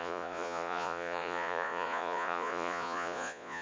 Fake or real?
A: fake